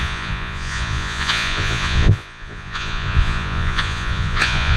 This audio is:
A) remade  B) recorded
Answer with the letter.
A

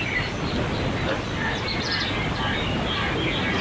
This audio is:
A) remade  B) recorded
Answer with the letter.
B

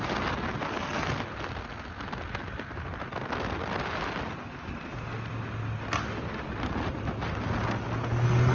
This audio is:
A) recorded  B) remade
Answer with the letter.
A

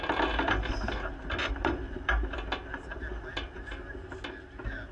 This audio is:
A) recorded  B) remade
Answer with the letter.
A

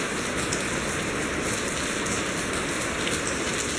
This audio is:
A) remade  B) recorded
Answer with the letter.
B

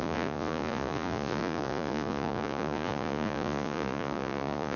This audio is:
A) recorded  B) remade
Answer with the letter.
B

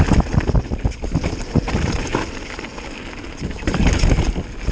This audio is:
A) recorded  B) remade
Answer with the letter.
A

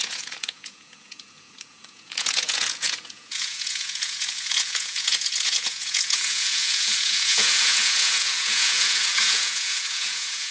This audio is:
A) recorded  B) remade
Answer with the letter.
B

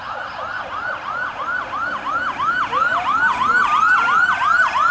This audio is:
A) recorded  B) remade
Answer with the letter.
A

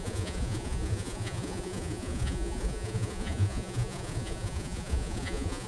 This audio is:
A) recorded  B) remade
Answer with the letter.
B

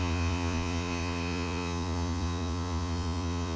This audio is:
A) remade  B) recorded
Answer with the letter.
A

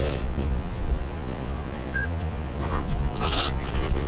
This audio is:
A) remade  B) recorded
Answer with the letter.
A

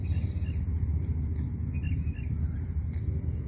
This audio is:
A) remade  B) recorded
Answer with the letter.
B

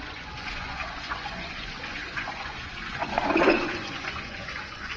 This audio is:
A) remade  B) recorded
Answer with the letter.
A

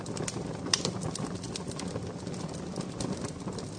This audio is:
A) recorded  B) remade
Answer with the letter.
A